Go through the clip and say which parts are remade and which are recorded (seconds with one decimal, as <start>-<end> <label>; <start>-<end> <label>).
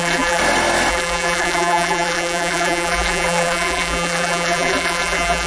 0.0-0.4 remade; 0.4-0.9 recorded; 0.9-5.5 remade